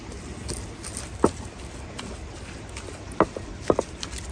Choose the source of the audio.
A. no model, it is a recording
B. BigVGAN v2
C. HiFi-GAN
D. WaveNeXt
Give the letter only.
A